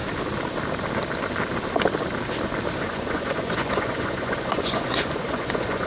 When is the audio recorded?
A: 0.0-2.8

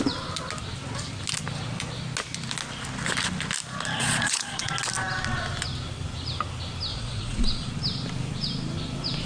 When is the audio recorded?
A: 0.0-4.0; 4.7-6.9; 7.7-9.3